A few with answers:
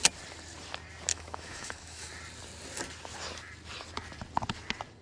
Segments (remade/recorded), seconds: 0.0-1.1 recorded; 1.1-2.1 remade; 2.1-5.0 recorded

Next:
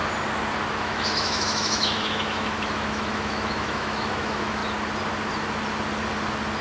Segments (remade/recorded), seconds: 0.0-0.7 recorded; 0.7-4.6 remade; 4.6-6.6 recorded

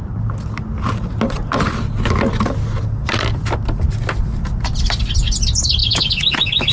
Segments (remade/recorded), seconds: 0.0-5.8 recorded; 5.8-6.7 remade

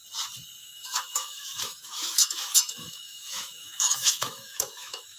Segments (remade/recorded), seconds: 0.0-0.6 recorded; 0.6-5.2 remade

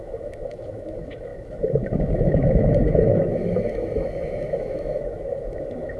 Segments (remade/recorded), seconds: 0.0-6.0 remade

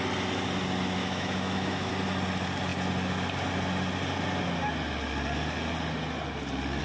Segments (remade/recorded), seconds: 0.0-1.0 recorded; 1.0-1.9 remade; 1.9-6.8 recorded

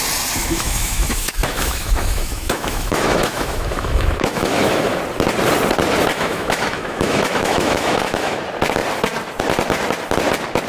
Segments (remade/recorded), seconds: 0.0-0.4 recorded; 0.4-5.0 remade; 5.0-6.1 recorded; 6.1-8.4 remade; 8.4-10.7 recorded